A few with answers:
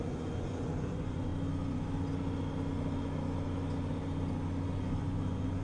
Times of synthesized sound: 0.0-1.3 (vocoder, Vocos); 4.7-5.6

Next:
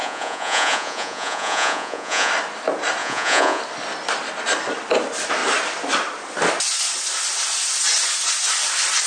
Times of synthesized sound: 0.0-2.3 (vocoder, Vocos); 3.0-3.6